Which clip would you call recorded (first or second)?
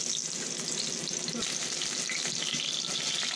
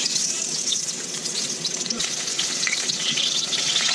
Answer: first